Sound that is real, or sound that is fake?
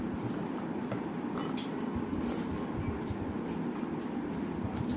real